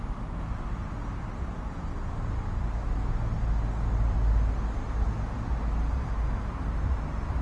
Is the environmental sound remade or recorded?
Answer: recorded